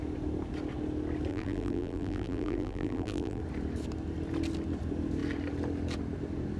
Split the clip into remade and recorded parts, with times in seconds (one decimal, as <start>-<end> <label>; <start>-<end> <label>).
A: 0.0-1.3 recorded; 1.3-3.4 remade; 3.4-6.6 recorded